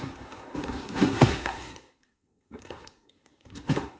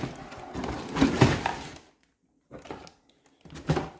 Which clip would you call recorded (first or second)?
second